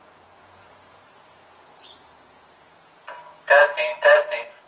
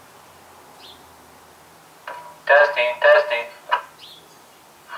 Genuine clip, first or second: second